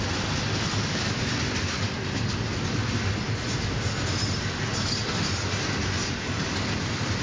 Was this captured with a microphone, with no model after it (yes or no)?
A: yes